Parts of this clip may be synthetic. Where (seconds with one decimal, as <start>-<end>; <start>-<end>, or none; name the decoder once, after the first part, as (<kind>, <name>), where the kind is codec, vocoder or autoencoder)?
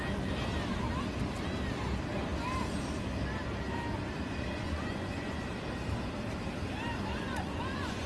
4.6-5.4 (vocoder, Vocos); 7.1-8.1